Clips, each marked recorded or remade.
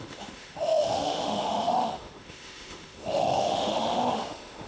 remade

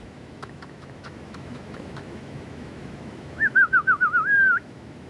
remade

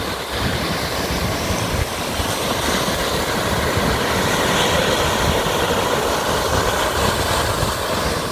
recorded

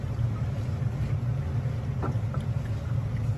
recorded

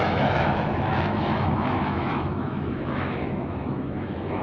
remade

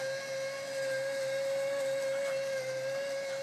recorded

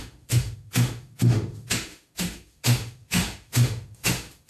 remade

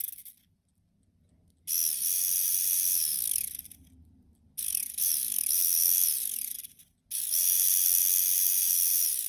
recorded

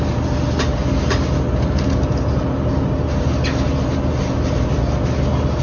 recorded